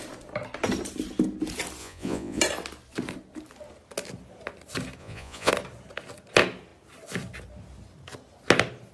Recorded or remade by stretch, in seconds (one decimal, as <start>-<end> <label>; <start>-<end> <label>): 0.0-1.8 recorded; 1.8-2.4 remade; 2.4-5.0 recorded; 5.0-5.5 remade; 5.5-8.9 recorded